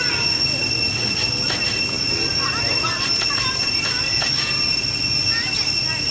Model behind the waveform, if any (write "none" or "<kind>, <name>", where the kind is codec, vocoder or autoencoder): none